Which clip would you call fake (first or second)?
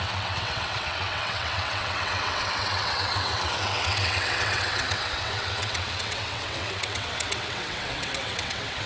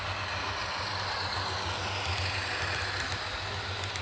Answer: first